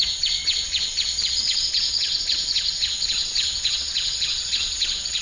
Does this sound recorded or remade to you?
remade